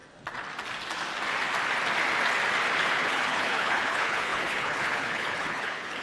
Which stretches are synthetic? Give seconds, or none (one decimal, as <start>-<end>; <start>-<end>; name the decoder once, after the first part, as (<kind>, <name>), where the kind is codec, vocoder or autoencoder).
2.9-6.0 (codec, HILCodec)